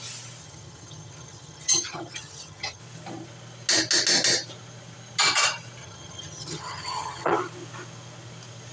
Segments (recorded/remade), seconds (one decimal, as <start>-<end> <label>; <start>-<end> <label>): 0.0-0.4 recorded; 0.4-2.8 remade; 2.8-5.8 recorded; 5.8-7.3 remade; 7.3-8.7 recorded